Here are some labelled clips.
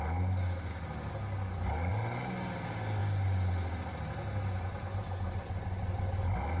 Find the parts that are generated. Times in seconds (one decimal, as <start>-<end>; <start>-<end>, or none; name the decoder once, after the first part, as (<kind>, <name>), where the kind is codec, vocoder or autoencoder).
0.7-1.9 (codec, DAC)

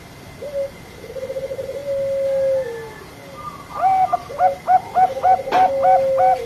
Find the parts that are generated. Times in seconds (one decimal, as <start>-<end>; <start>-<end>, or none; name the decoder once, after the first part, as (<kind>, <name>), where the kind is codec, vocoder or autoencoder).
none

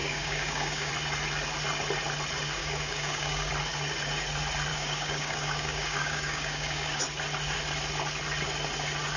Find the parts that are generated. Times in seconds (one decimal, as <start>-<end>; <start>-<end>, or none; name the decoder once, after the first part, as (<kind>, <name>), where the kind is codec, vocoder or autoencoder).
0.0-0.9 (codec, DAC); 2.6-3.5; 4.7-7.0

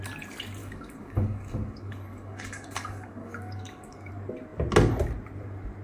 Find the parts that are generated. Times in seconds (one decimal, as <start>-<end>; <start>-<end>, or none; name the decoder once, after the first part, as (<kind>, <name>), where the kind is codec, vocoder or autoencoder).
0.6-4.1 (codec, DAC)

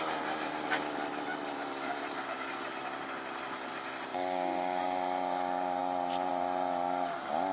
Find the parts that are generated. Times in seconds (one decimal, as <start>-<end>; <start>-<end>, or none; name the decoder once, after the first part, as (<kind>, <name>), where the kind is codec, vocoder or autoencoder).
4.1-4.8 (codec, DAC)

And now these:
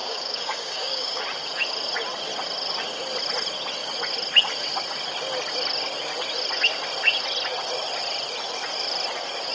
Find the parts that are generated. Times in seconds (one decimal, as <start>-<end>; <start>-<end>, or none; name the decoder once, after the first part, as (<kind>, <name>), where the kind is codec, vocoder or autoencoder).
0.0-1.2 (codec, DAC)